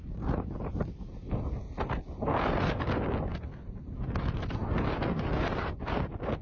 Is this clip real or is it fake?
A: real